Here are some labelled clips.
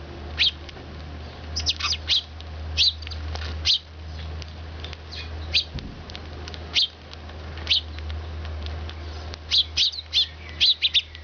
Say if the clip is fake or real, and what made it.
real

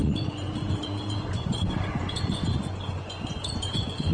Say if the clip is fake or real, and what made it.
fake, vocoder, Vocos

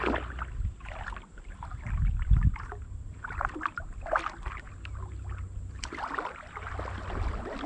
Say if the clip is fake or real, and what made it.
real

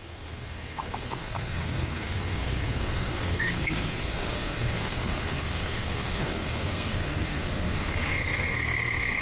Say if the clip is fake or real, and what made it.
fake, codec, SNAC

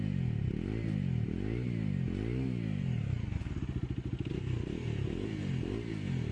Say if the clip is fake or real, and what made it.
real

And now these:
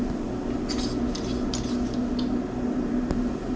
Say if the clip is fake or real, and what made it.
real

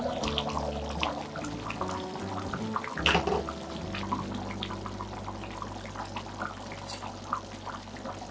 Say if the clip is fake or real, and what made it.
real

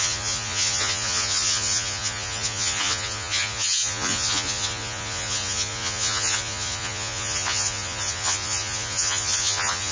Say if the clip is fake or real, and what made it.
fake, vocoder, Vocos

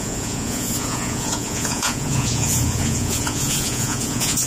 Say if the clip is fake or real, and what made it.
fake, vocoder, Vocos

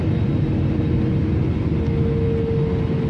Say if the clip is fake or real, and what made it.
real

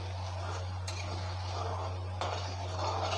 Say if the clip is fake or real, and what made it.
real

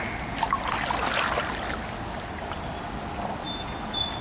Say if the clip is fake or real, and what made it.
real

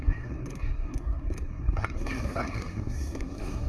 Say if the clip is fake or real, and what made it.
fake, codec, SNAC